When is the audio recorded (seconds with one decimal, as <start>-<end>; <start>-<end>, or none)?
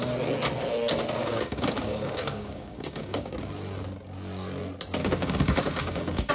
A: 0.0-1.2; 3.3-5.0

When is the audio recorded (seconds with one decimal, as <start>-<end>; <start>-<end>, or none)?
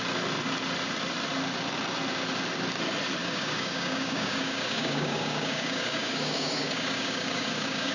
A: 0.0-3.2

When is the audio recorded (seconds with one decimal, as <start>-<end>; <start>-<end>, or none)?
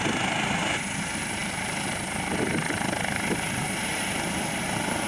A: 0.0-5.1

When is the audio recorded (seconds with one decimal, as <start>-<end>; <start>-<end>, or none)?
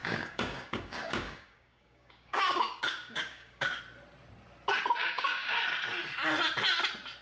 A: 3.8-5.0; 5.6-7.2